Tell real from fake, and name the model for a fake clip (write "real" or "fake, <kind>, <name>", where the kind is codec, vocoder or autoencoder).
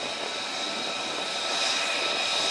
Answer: real